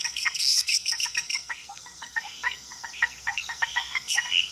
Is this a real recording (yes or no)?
no